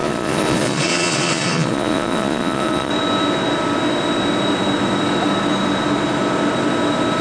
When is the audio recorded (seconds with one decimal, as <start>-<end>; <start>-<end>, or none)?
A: 2.9-7.2